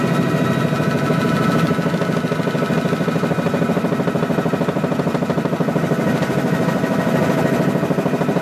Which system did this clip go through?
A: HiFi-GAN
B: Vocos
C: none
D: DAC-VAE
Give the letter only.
C